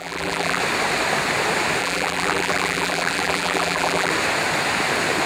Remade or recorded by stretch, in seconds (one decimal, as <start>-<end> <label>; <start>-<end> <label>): 0.0-0.6 remade; 0.6-1.8 recorded; 1.8-4.1 remade; 4.1-5.3 recorded